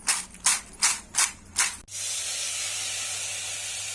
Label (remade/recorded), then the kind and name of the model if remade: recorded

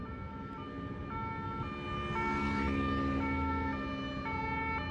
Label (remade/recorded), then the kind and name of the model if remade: recorded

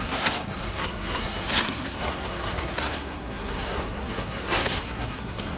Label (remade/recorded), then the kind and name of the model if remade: remade, codec, SNAC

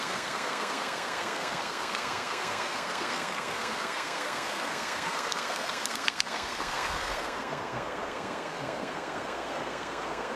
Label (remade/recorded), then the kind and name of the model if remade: remade, codec, SNAC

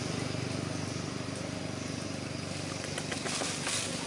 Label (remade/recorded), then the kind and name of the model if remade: recorded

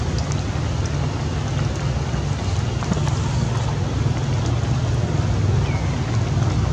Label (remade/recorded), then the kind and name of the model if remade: recorded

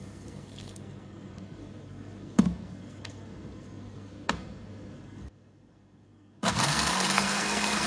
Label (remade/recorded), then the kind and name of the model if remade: remade, codec, SNAC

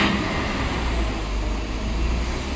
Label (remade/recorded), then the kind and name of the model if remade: recorded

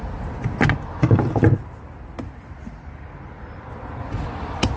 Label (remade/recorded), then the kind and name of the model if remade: recorded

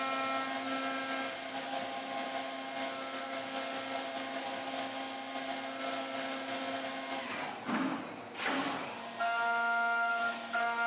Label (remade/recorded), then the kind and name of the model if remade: recorded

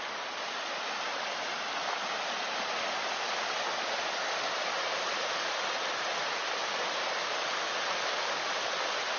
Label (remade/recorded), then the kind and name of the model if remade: recorded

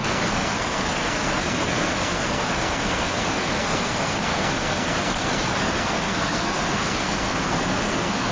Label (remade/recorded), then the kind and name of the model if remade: remade, codec, SNAC